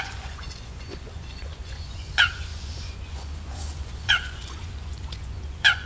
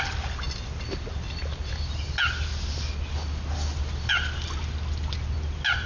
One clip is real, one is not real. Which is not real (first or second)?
first